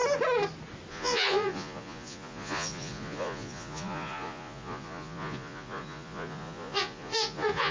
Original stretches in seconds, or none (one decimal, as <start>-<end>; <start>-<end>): 0.0-0.9